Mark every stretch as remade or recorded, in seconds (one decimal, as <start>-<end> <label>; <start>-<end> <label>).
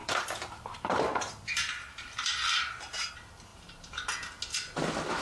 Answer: 0.0-3.1 remade; 3.1-3.5 recorded; 3.5-4.4 remade; 4.4-5.2 recorded